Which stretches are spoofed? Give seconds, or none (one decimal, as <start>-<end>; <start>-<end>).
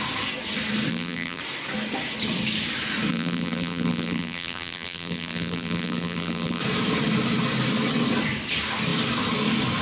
0.9-1.4; 3.1-6.6